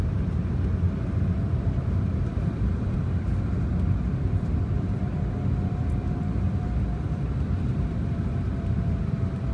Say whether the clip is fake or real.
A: fake